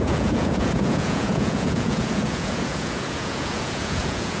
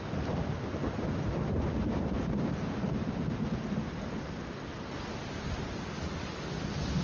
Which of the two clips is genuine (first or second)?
second